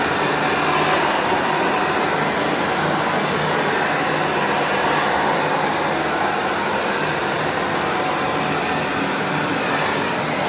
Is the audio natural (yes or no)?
yes